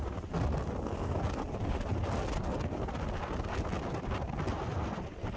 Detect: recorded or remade recorded